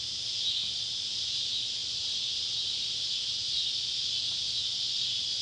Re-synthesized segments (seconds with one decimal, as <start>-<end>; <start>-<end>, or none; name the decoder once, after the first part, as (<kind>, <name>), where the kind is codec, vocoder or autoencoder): none